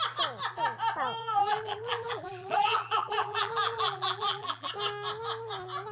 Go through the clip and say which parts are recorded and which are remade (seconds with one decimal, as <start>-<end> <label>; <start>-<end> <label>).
0.0-1.2 recorded; 1.2-4.7 remade; 4.7-5.9 recorded